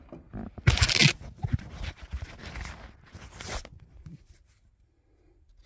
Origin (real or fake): real